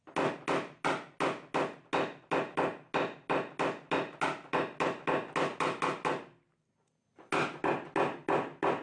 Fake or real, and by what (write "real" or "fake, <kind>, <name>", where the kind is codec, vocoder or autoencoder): real